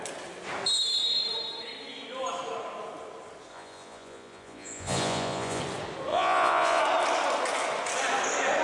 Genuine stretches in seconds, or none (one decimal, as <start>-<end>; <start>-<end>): 0.0-3.5; 5.6-6.1; 6.8-8.6